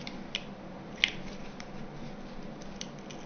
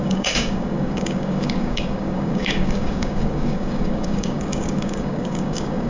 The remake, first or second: second